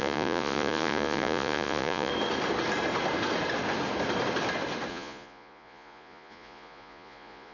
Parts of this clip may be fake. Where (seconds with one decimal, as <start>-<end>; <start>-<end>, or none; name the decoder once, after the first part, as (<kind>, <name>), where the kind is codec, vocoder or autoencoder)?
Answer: 0.0-2.1 (vocoder, Vocos); 4.9-7.5